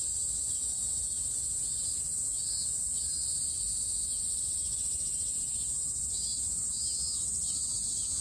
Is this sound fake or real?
real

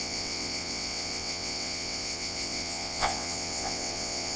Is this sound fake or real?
fake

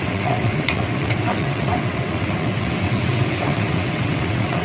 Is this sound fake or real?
fake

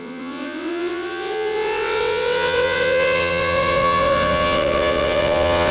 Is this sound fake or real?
fake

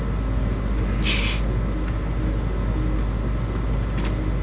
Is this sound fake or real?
real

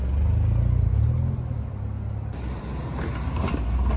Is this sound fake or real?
real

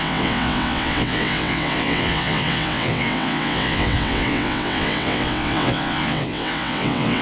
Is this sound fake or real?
fake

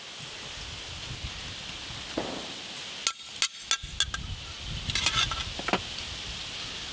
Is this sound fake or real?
real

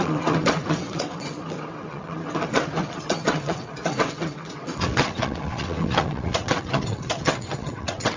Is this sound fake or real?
fake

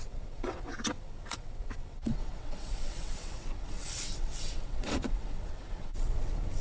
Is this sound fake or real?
fake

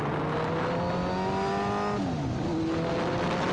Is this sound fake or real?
real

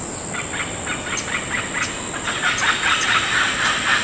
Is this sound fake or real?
real